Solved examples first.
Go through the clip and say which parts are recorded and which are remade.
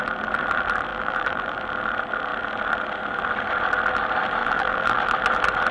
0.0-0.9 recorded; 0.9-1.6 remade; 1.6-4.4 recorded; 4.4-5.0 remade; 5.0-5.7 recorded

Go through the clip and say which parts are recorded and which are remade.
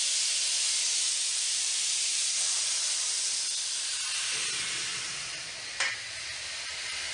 0.0-1.3 recorded; 1.3-3.4 remade; 3.4-4.9 recorded; 4.9-5.6 remade; 5.6-7.1 recorded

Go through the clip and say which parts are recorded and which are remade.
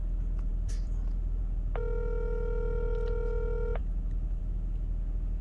0.0-0.5 recorded; 0.5-1.4 remade; 1.4-3.8 recorded; 3.8-4.4 remade; 4.4-5.4 recorded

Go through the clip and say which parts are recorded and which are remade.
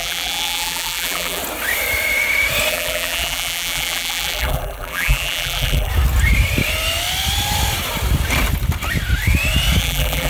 0.0-1.4 remade; 1.4-2.7 recorded; 2.7-5.9 remade; 5.9-9.8 recorded; 9.8-10.3 remade